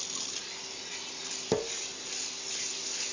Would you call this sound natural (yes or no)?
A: yes